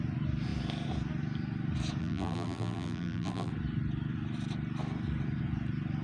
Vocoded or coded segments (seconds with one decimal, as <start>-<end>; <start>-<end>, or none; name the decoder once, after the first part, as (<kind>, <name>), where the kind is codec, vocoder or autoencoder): 2.0-3.5 (vocoder, BigVGAN v2)